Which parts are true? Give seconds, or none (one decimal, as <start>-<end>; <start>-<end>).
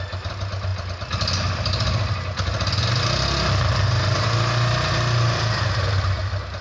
0.0-6.6